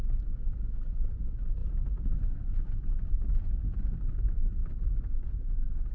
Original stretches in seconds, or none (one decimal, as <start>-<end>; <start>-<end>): 0.0-1.6; 2.9-5.9